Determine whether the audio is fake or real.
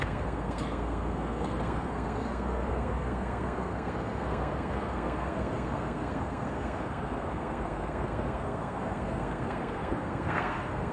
fake